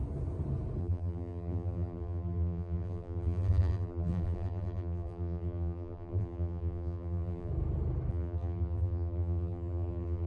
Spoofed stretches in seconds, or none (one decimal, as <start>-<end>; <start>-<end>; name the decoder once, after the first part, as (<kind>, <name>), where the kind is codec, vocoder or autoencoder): 0.8-7.5 (vocoder, BigVGAN v2); 8.1-10.3